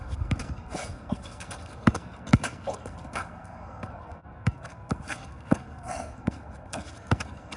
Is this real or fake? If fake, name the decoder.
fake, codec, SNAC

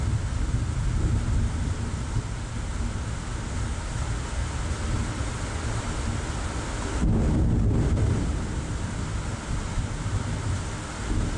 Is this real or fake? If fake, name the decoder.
real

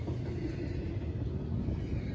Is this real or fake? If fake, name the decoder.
real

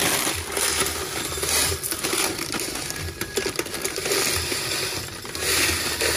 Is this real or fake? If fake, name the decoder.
real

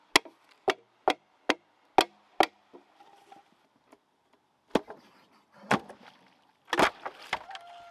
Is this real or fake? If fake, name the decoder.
real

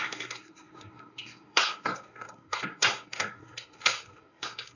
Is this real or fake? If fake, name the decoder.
fake, codec, SNAC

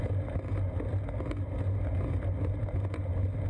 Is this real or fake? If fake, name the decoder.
real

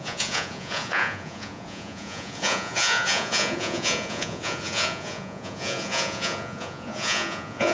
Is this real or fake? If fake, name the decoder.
fake, vocoder, Vocos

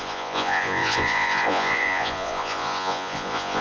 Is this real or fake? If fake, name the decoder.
fake, vocoder, Vocos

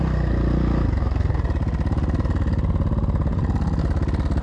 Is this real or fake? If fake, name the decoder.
real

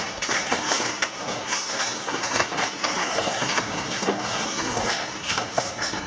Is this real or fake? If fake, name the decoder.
fake, codec, SNAC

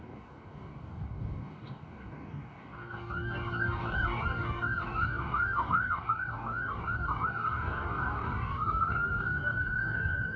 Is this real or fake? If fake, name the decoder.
fake, codec, DAC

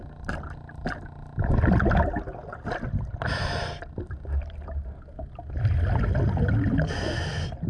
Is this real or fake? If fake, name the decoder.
real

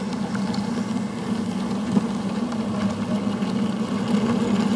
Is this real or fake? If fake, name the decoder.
real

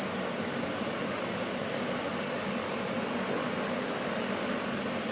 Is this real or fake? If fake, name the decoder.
real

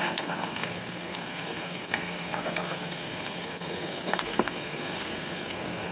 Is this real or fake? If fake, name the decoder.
fake, codec, SNAC